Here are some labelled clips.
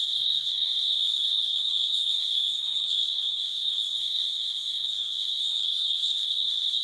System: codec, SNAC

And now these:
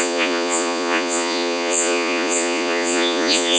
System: vocoder, Vocos